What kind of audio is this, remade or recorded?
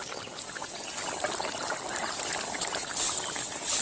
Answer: recorded